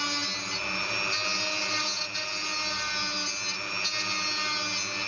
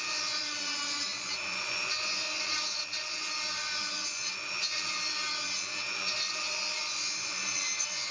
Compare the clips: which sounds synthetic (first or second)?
second